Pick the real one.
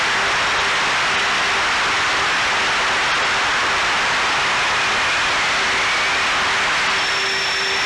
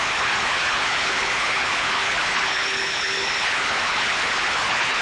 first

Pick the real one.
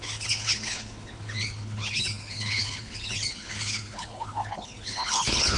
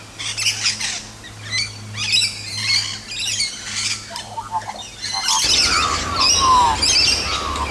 second